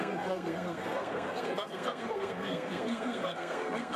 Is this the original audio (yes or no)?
no